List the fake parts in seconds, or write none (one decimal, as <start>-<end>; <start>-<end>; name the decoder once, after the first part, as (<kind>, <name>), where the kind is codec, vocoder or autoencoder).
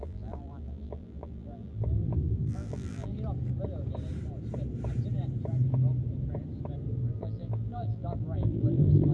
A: 0.0-3.1 (vocoder, BigVGAN v2); 6.9-9.1